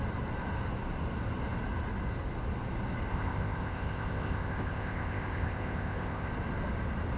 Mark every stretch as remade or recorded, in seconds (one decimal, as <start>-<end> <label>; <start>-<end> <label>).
0.0-3.1 recorded; 3.1-6.3 remade; 6.3-7.2 recorded